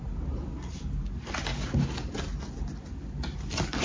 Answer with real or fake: real